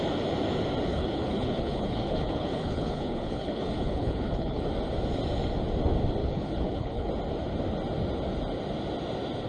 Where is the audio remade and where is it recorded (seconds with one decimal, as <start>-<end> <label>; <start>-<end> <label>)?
0.0-0.9 recorded; 0.9-4.7 remade; 4.7-6.2 recorded; 6.2-7.1 remade; 7.1-9.5 recorded